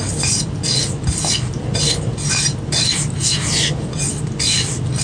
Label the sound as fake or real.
real